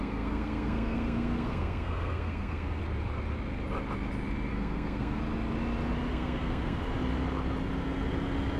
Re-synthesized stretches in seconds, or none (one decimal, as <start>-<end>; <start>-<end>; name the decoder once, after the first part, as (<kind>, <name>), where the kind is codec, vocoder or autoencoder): 0.0-2.8 (codec, SNAC); 4.5-5.2; 6.1-6.8